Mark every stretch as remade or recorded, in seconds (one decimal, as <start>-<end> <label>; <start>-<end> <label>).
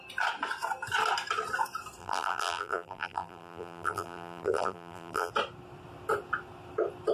0.0-2.0 recorded; 2.0-5.3 remade; 5.3-7.1 recorded